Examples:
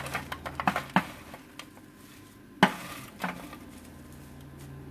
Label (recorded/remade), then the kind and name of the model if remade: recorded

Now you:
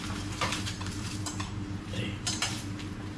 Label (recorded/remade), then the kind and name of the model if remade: remade, vocoder, BigVGAN v2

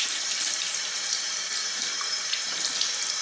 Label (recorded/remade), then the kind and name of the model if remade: remade, vocoder, BigVGAN v2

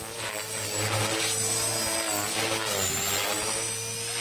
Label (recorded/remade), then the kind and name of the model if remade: recorded